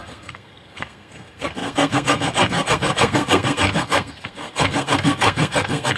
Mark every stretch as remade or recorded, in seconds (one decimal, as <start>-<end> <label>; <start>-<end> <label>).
0.0-6.0 remade